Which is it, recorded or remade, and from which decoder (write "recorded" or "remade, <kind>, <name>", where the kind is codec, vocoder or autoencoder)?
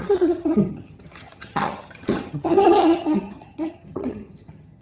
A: remade, vocoder, HiFi-GAN